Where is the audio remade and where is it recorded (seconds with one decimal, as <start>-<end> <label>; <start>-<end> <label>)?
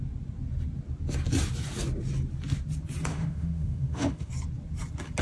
0.0-3.1 recorded; 3.1-4.3 remade; 4.3-5.2 recorded